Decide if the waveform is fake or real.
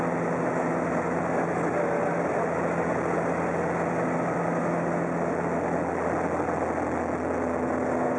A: real